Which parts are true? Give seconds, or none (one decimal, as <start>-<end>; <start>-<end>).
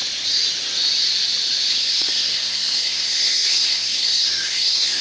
0.0-1.7